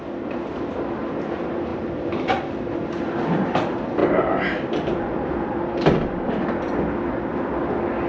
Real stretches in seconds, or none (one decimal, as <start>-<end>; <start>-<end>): 0.0-4.0; 6.3-7.3